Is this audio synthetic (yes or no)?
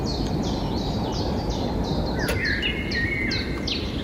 no